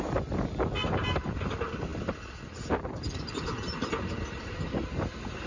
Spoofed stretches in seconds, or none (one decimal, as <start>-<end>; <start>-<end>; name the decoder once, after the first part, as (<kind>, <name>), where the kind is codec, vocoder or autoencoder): none